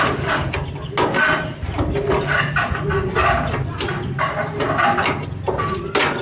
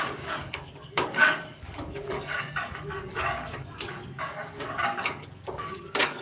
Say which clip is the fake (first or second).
second